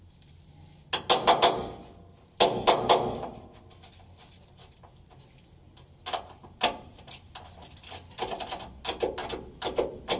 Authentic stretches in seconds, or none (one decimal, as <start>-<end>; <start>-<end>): 0.0-10.2